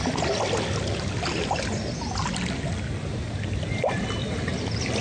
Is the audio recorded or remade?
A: recorded